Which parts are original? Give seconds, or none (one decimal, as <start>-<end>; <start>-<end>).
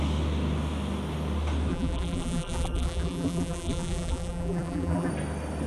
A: 0.0-1.7; 5.1-5.7